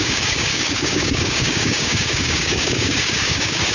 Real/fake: fake